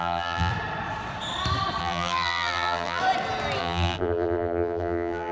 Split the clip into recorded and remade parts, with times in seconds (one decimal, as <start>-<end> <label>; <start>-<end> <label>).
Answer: 0.0-0.5 remade; 0.5-1.8 recorded; 1.8-3.0 remade; 3.0-3.6 recorded; 3.6-5.3 remade